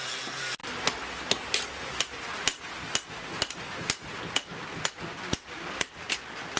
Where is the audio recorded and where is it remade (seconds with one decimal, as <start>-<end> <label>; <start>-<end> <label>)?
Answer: 0.0-4.5 recorded; 4.5-6.6 remade